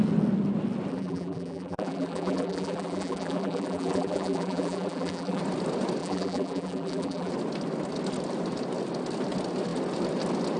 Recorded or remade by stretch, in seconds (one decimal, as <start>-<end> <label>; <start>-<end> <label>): 0.0-0.9 recorded; 0.9-5.4 remade; 5.4-6.0 recorded; 6.0-7.3 remade; 7.3-10.6 recorded